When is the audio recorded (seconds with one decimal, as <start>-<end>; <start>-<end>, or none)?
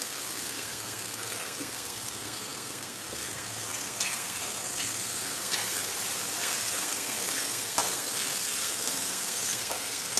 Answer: 5.9-6.4